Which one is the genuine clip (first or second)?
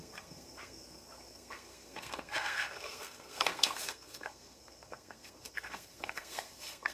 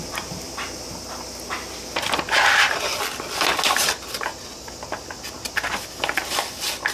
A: second